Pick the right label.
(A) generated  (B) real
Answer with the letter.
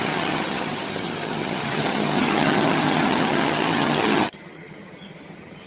A